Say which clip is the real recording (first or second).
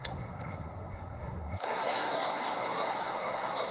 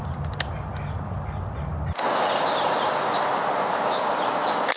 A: second